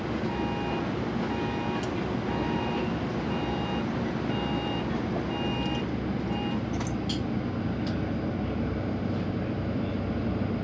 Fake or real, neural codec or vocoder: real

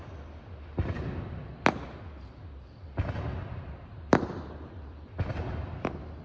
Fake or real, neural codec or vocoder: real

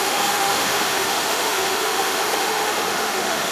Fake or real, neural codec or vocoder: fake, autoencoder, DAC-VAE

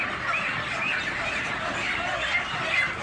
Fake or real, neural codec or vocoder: real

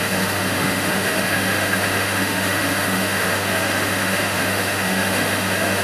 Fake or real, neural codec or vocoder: fake, autoencoder, DAC-VAE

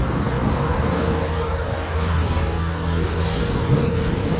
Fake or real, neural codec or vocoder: fake, codec, DAC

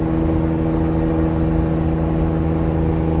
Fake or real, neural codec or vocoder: real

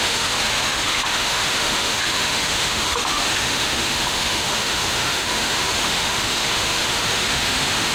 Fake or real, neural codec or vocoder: fake, autoencoder, DAC-VAE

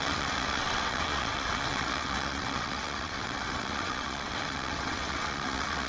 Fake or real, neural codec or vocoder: fake, vocoder, WaveNeXt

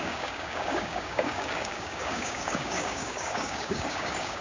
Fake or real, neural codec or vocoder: fake, codec, DAC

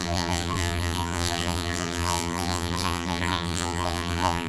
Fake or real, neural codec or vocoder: fake, vocoder, BigVGAN v2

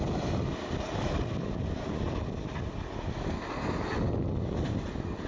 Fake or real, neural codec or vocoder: real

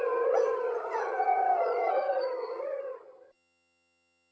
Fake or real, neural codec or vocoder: fake, vocoder, HiFi-GAN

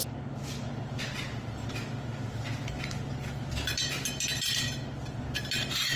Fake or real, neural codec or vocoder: real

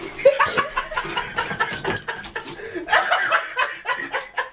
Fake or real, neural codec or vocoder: real